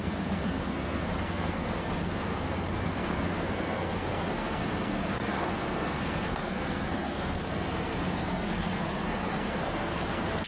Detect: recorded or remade remade